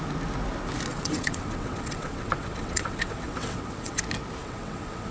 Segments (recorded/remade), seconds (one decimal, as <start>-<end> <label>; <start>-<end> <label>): 0.0-0.9 recorded; 0.9-4.0 remade; 4.0-4.4 recorded; 4.4-5.1 remade